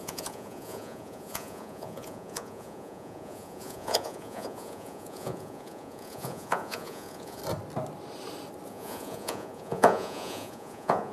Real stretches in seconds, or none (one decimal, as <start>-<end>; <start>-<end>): 7.4-8.7